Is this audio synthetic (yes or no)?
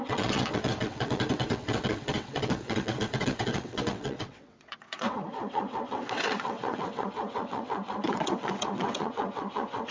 yes